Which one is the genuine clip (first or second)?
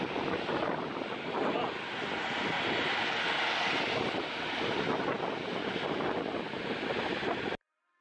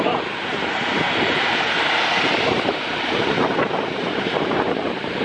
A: first